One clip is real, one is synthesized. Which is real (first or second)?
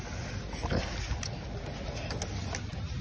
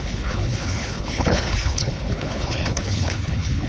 first